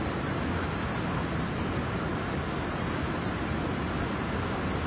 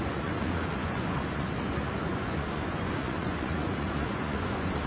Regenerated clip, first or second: second